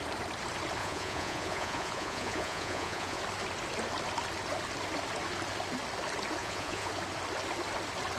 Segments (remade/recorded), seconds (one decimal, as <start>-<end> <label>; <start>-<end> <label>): 0.0-0.8 recorded; 0.8-3.2 remade; 3.2-6.4 recorded; 6.4-6.9 remade; 6.9-8.2 recorded